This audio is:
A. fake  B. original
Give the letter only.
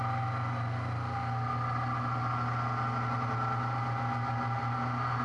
B